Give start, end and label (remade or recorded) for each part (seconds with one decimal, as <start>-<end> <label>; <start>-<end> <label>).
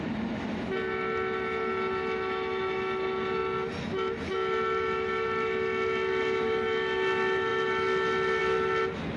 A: 0.0-9.2 recorded